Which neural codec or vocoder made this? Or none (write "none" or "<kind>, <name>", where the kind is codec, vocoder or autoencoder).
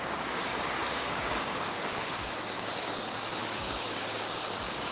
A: codec, DAC